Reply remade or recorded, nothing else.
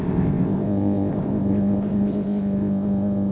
remade